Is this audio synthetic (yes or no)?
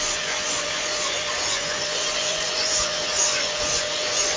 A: yes